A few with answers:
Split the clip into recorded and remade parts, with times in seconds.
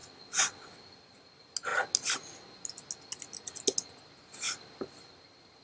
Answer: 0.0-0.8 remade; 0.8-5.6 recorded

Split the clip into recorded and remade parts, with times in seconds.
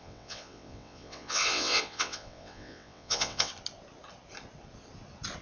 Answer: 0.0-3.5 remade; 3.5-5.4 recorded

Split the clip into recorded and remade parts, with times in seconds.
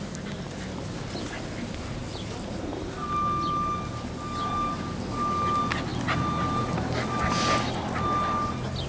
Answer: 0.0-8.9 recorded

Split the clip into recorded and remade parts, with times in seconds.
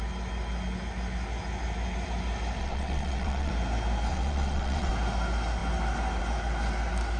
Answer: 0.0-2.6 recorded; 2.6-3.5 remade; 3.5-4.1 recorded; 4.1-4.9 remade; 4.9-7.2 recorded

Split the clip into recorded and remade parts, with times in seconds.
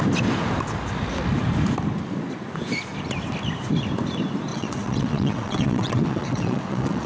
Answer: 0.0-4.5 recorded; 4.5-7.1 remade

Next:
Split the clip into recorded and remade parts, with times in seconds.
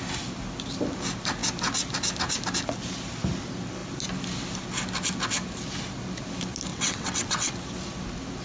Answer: 0.0-6.7 recorded; 6.7-7.5 remade; 7.5-8.4 recorded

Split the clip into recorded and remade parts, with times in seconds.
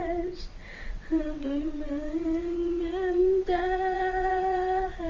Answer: 0.0-5.1 remade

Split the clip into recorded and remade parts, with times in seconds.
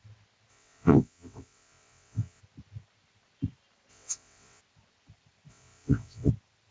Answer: 0.0-0.5 recorded; 0.5-2.4 remade; 2.4-3.9 recorded; 3.9-4.6 remade; 4.6-5.5 recorded; 5.5-6.3 remade; 6.3-6.7 recorded